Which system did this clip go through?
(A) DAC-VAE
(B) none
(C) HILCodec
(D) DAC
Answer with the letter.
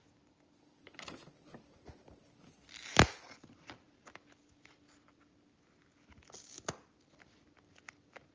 B